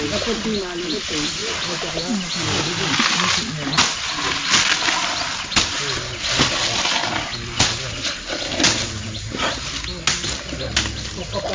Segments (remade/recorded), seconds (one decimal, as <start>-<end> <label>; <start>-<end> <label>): 0.0-11.5 recorded